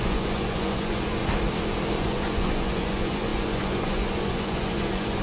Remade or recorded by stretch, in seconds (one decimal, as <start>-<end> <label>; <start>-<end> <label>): 0.0-1.2 remade; 1.2-2.0 recorded; 2.0-5.2 remade